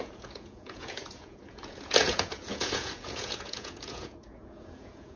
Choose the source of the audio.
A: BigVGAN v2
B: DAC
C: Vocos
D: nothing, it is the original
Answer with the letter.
C